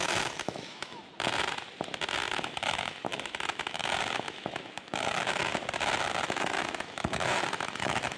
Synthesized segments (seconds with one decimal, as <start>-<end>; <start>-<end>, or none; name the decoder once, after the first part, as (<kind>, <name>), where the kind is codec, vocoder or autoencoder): 0.0-1.0 (autoencoder, DAC-VAE); 2.3-5.5; 6.0-8.2